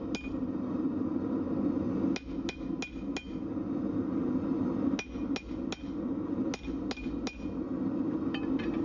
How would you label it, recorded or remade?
recorded